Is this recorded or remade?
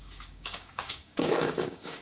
remade